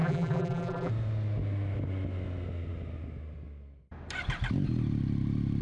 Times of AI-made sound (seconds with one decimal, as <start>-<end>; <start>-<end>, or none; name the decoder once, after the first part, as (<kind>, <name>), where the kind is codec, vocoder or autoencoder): 0.0-0.9 (vocoder, BigVGAN v2)